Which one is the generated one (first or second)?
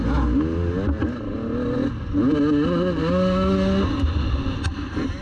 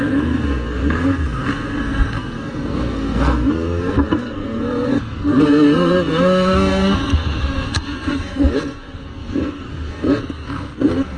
second